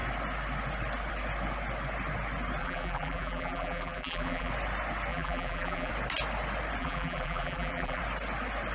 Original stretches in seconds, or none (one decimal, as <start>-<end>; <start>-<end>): 0.0-2.6; 4.5-5.1; 5.9-6.8; 8.0-8.7

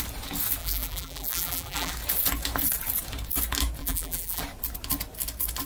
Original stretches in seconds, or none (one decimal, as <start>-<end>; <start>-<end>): 0.0-0.6; 1.9-3.8; 4.4-5.7

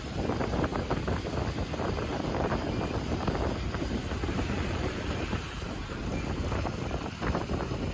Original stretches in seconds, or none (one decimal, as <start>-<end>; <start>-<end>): 0.0-2.1; 6.1-7.9

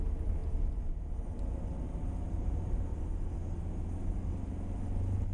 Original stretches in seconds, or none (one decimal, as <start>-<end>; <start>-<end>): 0.4-1.0; 2.9-4.3

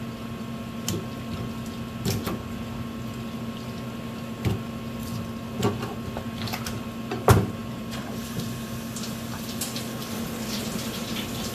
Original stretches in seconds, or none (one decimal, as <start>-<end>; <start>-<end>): 0.0-7.6; 8.2-11.5

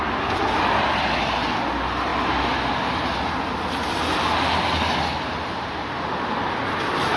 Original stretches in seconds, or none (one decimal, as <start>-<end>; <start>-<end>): 0.0-7.2